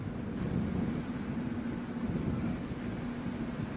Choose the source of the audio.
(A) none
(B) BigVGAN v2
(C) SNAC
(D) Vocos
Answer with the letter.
A